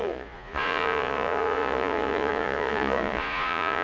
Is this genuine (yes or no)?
no